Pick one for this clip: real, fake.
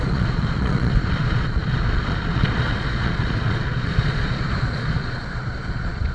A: fake